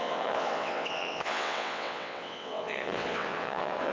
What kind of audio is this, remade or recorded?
remade